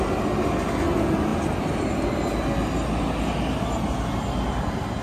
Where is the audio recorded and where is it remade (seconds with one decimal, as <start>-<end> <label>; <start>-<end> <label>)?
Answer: 0.0-5.0 recorded